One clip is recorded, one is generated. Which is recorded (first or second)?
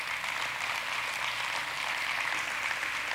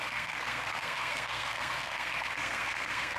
first